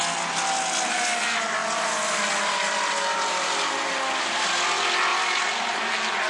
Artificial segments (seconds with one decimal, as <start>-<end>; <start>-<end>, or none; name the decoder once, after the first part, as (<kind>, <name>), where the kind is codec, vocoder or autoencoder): none